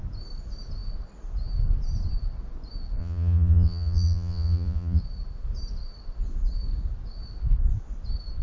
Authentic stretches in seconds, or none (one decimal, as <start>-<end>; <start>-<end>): 0.0-3.0; 5.0-8.4